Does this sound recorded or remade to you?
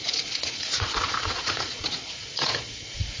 remade